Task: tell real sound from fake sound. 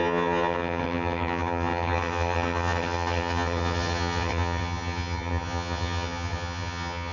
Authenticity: fake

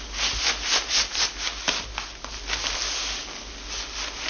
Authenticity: real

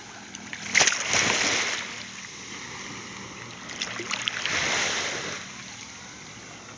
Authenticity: real